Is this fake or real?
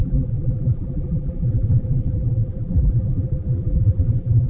fake